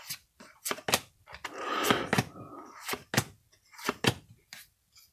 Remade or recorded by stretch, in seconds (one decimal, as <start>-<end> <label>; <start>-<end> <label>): 0.0-5.1 recorded